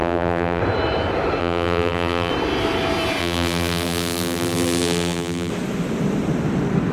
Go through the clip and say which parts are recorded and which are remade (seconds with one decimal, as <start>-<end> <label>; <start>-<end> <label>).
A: 0.0-0.6 remade; 0.6-1.4 recorded; 1.4-2.3 remade; 2.3-3.2 recorded; 3.2-5.5 remade; 5.5-6.9 recorded